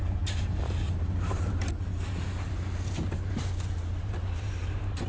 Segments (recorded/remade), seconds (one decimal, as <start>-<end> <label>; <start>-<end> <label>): 0.0-1.7 remade; 1.7-3.5 recorded; 3.5-5.1 remade